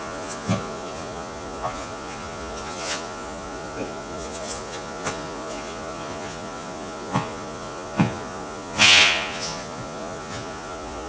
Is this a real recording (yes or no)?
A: no